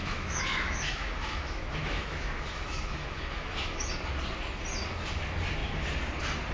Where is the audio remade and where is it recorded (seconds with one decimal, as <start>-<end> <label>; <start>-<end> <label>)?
0.0-3.9 remade; 3.9-6.5 recorded